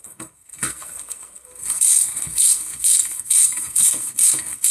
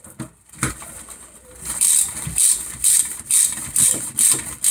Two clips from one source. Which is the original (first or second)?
second